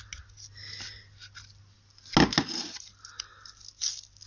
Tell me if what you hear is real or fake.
real